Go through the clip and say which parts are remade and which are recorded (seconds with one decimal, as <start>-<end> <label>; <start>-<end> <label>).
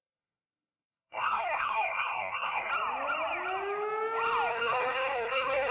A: 0.0-2.7 remade; 2.7-4.5 recorded; 4.5-5.7 remade